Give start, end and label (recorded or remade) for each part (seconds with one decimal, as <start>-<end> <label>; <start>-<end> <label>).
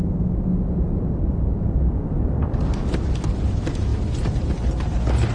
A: 0.0-5.3 recorded